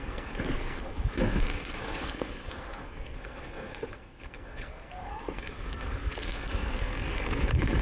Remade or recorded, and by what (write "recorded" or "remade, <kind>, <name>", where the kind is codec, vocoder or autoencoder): remade, codec, SNAC